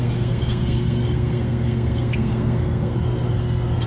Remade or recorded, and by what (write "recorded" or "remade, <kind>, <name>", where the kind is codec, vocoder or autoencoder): remade, codec, SNAC